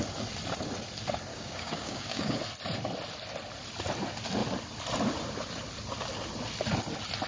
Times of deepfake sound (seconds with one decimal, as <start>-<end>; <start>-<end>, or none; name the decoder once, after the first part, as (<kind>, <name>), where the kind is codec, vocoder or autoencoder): 1.3-2.4 (codec, DAC)